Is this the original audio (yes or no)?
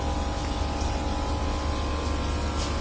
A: yes